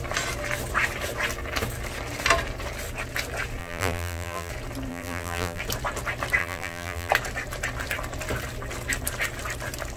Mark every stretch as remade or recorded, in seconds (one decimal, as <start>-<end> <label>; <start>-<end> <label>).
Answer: 0.0-3.6 recorded; 3.6-4.5 remade; 4.5-4.9 recorded; 4.9-5.6 remade; 5.6-6.4 recorded; 6.4-7.1 remade; 7.1-10.0 recorded